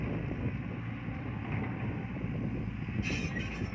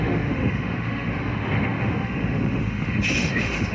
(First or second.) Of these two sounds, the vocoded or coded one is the second